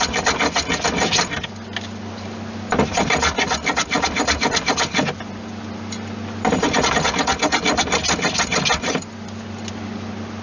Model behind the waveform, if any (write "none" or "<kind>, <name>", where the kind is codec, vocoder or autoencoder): none